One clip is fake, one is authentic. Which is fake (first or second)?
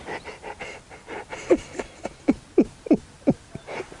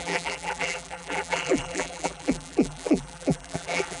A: second